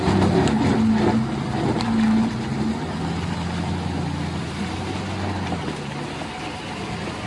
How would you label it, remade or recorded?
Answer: recorded